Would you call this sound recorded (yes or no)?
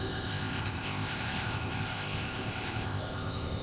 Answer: no